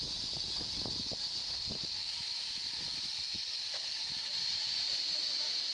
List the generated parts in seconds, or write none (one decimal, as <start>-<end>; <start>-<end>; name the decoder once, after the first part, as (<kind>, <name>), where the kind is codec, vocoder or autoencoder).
1.4-4.8 (vocoder, BigVGAN v2)